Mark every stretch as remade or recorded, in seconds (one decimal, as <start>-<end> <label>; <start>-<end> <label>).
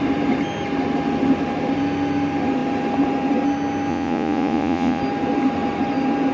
0.0-3.9 recorded; 3.9-5.0 remade; 5.0-6.3 recorded